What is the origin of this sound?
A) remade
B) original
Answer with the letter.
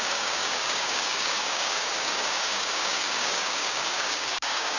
A